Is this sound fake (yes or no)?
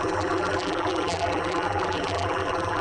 yes